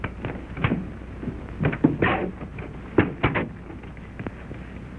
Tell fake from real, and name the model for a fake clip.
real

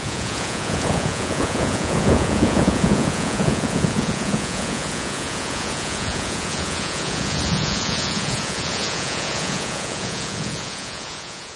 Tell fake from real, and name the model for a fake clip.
fake, vocoder, Vocos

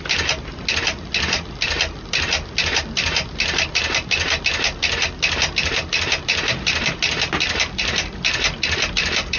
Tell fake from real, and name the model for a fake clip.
real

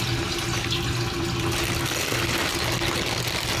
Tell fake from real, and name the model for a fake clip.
real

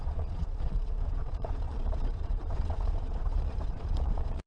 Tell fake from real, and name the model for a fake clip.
fake, vocoder, Vocos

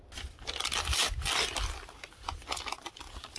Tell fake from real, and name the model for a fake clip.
real